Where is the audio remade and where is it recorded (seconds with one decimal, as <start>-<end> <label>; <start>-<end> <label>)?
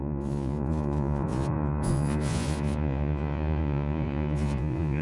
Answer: 0.0-5.0 remade